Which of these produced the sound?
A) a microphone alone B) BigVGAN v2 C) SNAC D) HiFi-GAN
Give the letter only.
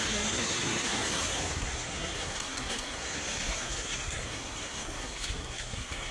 C